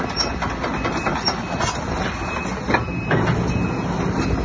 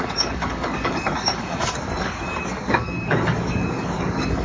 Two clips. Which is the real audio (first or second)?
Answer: first